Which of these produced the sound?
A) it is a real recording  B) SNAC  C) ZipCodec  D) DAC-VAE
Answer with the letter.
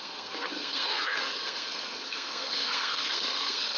B